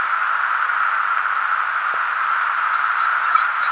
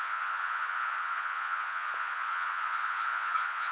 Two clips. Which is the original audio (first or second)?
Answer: first